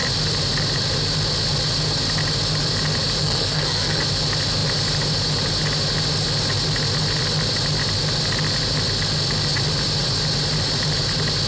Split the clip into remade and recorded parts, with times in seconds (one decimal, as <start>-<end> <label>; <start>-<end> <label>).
0.0-3.2 recorded; 3.2-4.0 remade; 4.0-11.5 recorded

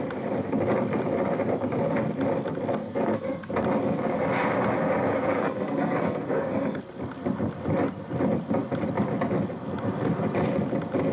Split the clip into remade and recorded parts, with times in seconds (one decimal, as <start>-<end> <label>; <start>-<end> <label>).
0.0-2.8 recorded; 2.8-3.5 remade; 3.5-5.1 recorded; 5.1-6.8 remade; 6.8-11.1 recorded